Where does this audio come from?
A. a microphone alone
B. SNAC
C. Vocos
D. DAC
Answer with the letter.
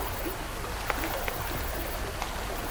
A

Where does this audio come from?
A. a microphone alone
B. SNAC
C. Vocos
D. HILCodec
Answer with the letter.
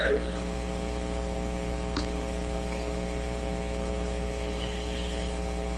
D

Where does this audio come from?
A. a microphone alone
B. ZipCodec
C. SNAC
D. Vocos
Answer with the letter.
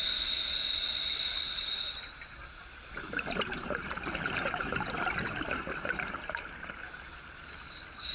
A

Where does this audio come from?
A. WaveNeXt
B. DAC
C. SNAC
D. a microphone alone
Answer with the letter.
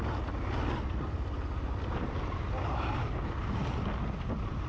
D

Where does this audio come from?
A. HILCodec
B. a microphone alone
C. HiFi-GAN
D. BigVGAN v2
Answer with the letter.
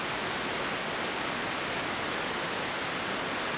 B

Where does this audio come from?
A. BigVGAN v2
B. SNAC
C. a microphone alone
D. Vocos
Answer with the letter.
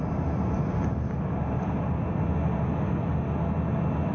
C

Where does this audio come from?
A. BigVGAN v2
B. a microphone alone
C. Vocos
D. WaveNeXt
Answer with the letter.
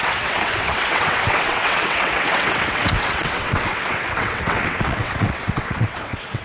D